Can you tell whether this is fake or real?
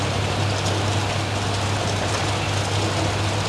real